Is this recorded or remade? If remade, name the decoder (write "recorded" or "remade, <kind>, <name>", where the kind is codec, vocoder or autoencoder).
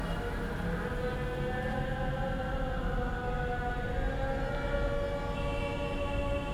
recorded